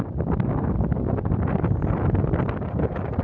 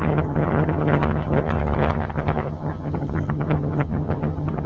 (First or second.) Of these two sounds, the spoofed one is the second